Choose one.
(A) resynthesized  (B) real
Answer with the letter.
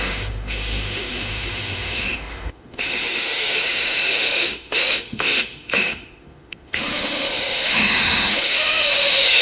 A